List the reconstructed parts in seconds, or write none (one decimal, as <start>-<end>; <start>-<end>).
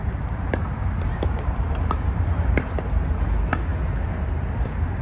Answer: 0.0-2.6